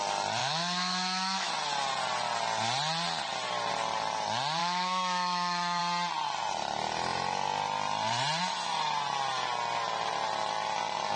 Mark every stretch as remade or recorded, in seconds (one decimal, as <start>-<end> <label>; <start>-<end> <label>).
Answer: 0.0-0.4 recorded; 0.4-1.5 remade; 1.5-4.6 recorded; 4.6-5.8 remade; 5.8-11.2 recorded